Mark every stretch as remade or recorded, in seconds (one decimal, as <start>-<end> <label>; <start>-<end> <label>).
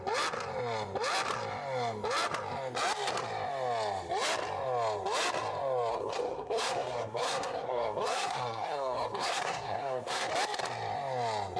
0.0-5.9 recorded; 5.9-10.3 remade; 10.3-11.6 recorded